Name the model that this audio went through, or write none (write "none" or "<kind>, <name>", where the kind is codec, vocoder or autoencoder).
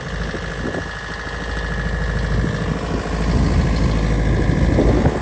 none